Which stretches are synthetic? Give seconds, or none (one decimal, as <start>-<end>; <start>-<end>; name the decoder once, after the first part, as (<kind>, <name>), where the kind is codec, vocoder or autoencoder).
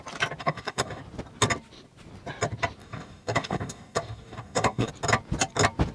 0.4-1.0 (codec, DAC); 2.8-4.9